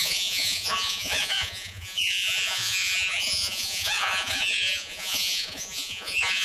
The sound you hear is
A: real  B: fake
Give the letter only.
B